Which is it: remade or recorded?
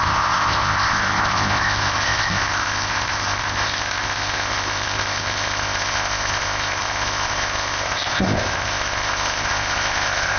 remade